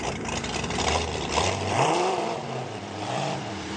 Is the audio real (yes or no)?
no